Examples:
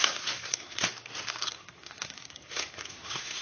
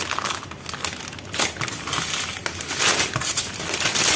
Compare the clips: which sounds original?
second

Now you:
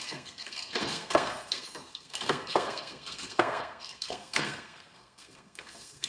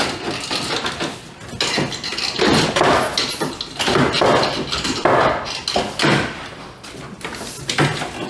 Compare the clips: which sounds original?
second